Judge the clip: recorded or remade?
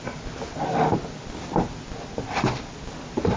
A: recorded